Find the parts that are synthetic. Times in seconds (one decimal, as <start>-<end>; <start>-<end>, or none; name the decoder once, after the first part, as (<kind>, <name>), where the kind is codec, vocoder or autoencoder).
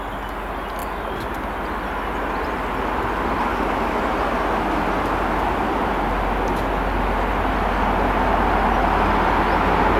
3.5-4.0 (codec, DAC)